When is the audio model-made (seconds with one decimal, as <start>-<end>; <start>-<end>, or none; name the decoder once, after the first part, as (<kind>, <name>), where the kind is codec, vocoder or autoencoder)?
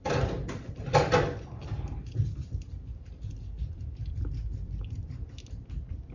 none